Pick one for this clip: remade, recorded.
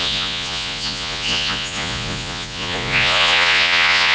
remade